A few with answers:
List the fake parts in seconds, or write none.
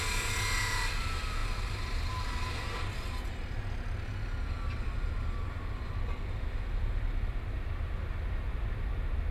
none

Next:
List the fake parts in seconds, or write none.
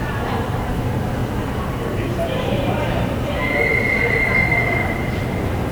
0.0-5.7 (vocoder, BigVGAN v2)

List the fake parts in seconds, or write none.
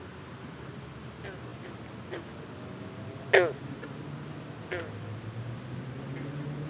none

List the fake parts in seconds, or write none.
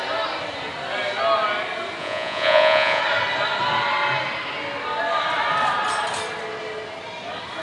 2.0-3.0 (vocoder, Vocos)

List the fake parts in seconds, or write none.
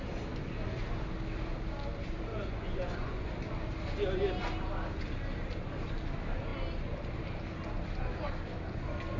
2.3-3.3 (vocoder, Vocos)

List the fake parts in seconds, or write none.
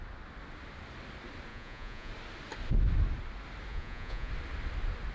1.5-2.1 (vocoder, Vocos); 3.7-4.3